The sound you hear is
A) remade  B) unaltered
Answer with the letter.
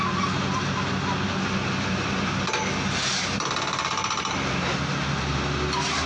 B